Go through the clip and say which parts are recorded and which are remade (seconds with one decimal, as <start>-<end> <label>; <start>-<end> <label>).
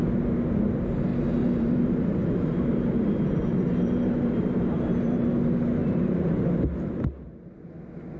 0.0-1.1 recorded; 1.1-5.3 remade; 5.3-5.8 recorded; 5.8-6.5 remade; 6.5-8.2 recorded